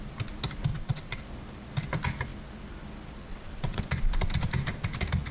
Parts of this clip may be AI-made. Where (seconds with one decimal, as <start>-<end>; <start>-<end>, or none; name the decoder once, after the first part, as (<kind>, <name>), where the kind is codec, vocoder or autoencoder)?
0.7-1.2 (vocoder, WaveNeXt); 3.3-3.8